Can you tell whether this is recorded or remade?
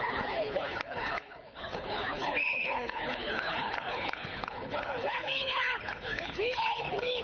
remade